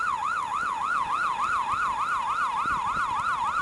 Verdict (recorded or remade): recorded